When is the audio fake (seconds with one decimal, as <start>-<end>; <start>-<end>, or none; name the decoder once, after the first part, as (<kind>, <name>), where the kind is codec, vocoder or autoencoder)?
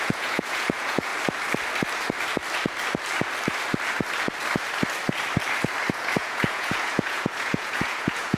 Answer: 0.0-1.1 (vocoder, Vocos); 5.9-8.4